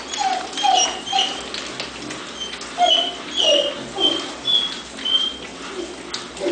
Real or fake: real